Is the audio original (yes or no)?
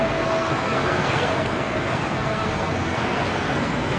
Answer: no